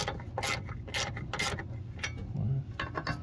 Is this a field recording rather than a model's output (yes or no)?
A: yes